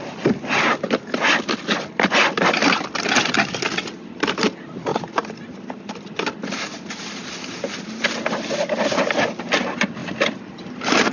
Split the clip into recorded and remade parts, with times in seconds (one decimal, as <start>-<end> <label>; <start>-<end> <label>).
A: 0.0-11.1 recorded